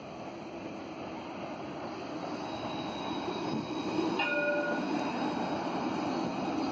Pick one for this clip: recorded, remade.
recorded